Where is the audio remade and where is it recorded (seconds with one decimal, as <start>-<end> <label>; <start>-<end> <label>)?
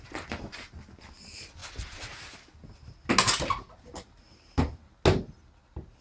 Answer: 0.0-6.0 recorded